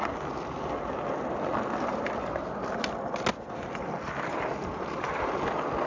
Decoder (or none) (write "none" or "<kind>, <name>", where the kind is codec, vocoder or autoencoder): none